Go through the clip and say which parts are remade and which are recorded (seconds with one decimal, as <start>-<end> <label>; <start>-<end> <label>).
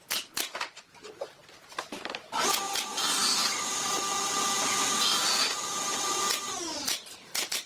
0.0-7.7 recorded